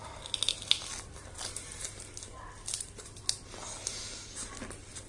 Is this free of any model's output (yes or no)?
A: yes